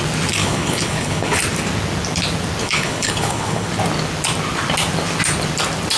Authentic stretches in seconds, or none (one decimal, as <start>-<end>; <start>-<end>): 0.0-0.4; 1.4-2.6; 3.7-6.0